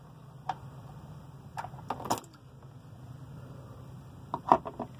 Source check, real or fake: real